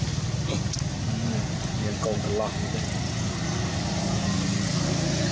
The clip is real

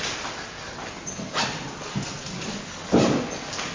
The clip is real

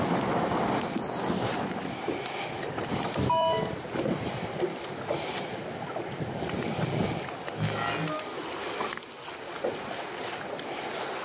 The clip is real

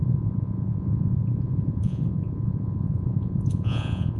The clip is fake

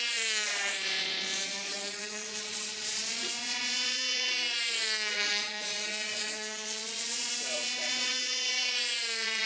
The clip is fake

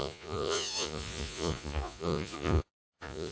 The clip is fake